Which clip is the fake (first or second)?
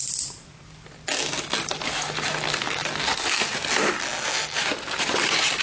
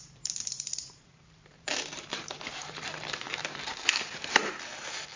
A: second